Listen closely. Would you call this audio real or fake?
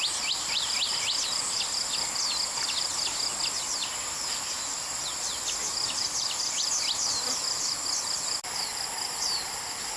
real